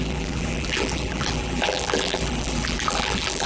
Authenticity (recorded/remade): remade